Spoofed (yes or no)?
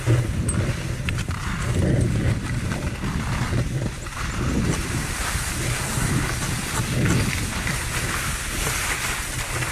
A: no